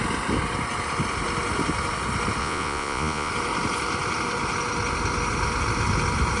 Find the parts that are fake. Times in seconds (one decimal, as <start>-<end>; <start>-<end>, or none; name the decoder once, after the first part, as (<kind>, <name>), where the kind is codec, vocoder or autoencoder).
2.4-3.3 (vocoder, Vocos)